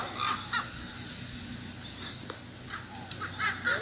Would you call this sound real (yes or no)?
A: yes